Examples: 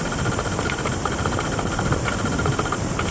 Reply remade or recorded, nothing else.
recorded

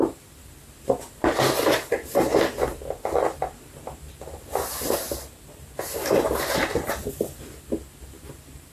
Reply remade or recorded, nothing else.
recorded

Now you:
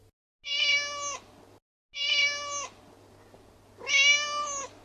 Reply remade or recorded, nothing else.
recorded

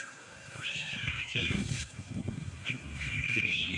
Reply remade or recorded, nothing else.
remade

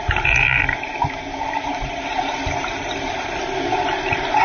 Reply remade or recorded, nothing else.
remade